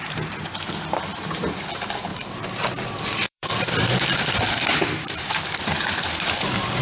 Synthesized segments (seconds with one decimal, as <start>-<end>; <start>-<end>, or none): 2.1-4.0; 5.0-5.6